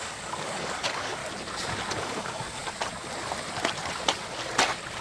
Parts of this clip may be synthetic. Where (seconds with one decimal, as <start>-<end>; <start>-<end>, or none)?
0.0-1.2; 2.0-2.6